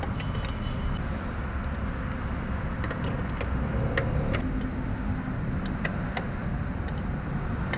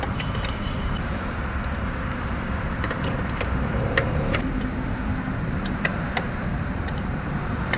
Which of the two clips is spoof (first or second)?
second